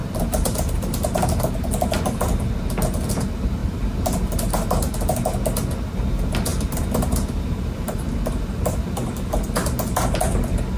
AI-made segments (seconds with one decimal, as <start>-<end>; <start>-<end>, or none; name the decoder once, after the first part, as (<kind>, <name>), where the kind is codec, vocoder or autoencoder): 0.0-1.5 (vocoder, BigVGAN v2); 3.6-4.5; 6.5-9.3